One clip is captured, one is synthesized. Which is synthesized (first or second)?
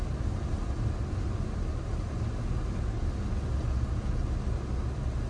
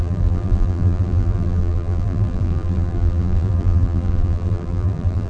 second